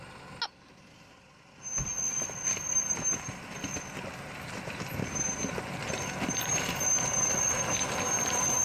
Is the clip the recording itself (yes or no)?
yes